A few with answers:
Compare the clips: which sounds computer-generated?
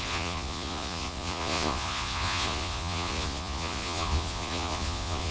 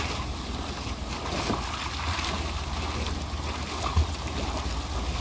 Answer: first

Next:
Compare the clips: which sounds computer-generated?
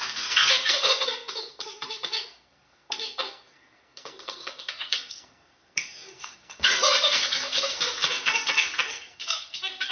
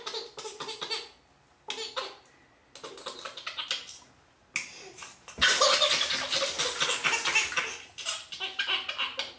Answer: first